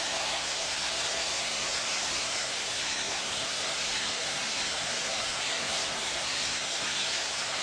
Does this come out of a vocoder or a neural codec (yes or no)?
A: yes